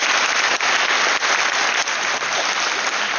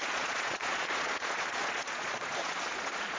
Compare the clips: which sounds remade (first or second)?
second